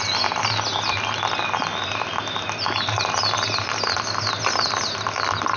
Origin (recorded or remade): recorded